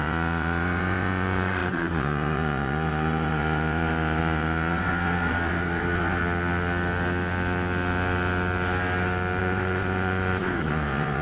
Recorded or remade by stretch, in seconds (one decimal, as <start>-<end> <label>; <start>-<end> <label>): 0.0-6.2 remade; 6.2-9.4 recorded; 9.4-11.2 remade